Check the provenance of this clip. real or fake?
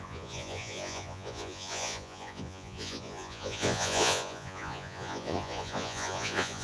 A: fake